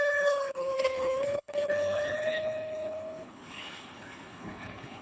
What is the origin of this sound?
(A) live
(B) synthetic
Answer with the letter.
B